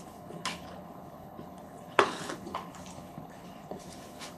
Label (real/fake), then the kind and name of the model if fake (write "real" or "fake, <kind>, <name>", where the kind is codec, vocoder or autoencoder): fake, codec, HILCodec